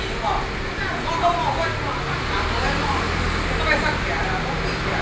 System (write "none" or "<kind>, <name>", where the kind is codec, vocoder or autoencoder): none